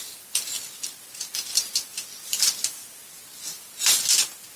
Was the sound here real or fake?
real